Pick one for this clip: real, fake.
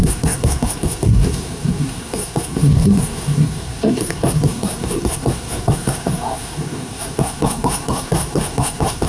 fake